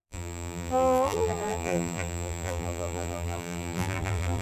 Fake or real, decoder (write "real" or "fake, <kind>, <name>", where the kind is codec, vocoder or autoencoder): fake, vocoder, BigVGAN v2